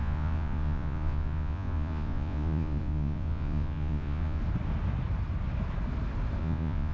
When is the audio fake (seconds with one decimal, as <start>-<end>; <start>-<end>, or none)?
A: 0.0-4.4; 6.4-6.9

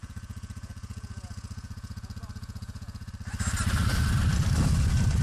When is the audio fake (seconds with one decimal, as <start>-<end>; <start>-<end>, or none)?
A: 0.0-3.1

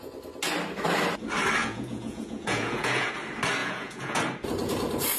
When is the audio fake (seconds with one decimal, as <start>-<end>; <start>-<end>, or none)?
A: 1.6-3.1; 3.6-4.2

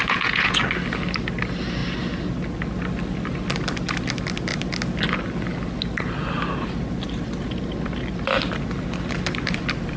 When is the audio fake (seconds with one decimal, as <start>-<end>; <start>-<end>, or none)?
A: 0.0-0.6